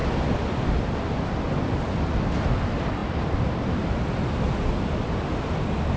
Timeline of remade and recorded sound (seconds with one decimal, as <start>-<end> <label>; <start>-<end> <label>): 0.0-6.0 recorded